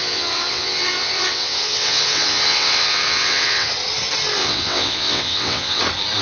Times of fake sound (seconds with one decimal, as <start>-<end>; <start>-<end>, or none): 0.0-3.7; 4.4-5.8